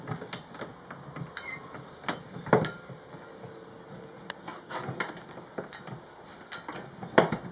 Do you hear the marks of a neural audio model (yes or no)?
no